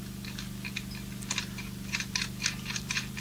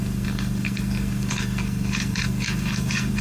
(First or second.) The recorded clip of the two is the first